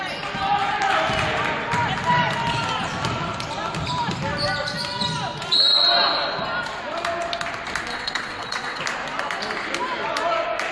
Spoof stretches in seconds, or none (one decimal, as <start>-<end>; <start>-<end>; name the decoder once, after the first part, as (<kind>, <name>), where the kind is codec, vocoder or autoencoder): 7.9-8.8 (vocoder, WaveNeXt)